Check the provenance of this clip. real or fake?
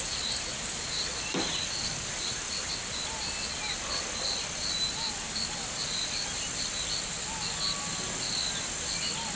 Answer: real